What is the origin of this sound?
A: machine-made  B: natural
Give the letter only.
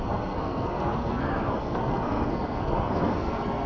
A